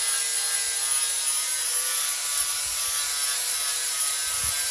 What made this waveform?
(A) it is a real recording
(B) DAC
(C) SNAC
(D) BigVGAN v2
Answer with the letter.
A